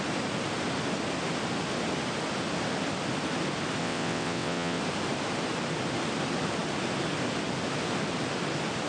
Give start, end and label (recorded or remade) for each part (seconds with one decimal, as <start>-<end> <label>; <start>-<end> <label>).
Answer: 0.0-3.8 recorded; 3.8-4.8 remade; 4.8-8.9 recorded